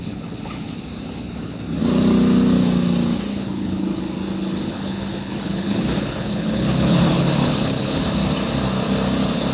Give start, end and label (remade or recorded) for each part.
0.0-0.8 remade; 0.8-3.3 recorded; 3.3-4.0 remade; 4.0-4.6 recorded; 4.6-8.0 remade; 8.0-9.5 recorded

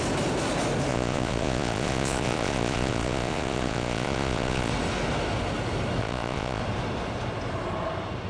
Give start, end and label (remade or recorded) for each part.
0.0-0.9 recorded; 0.9-4.7 remade; 4.7-6.0 recorded; 6.0-6.6 remade; 6.6-8.3 recorded